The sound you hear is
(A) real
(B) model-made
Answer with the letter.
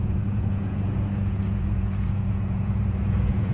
B